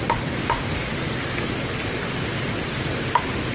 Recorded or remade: recorded